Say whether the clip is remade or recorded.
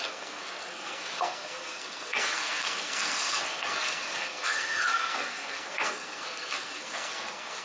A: remade